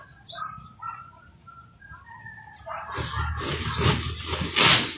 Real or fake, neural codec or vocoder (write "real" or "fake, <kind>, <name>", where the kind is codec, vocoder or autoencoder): real